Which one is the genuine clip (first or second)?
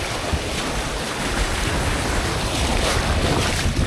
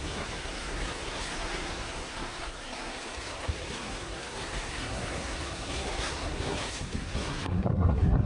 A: first